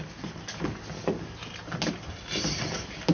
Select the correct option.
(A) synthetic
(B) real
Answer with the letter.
B